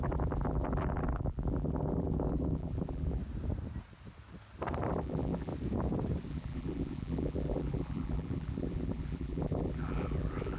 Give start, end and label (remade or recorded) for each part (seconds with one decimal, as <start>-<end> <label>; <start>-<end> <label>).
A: 0.0-3.2 remade; 3.2-4.9 recorded; 4.9-5.5 remade; 5.5-6.3 recorded; 6.3-10.6 remade